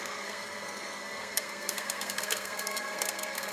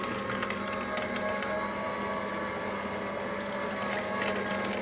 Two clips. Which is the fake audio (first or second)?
first